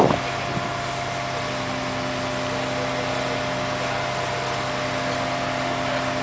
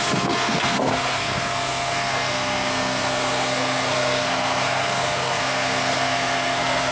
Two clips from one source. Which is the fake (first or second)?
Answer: second